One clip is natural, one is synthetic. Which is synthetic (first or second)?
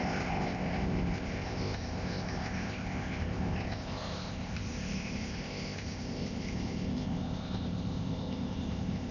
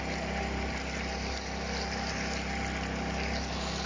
first